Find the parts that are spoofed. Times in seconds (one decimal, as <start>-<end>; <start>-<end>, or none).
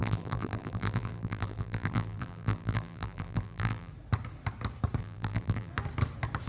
0.0-3.9; 5.0-5.7